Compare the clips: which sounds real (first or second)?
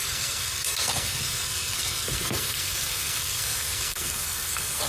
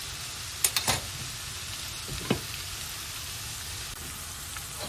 second